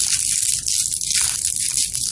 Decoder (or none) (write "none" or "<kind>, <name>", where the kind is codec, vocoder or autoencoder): none